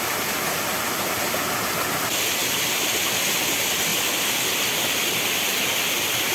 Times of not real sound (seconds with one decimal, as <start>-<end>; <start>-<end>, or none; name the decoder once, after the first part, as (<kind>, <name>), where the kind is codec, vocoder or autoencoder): none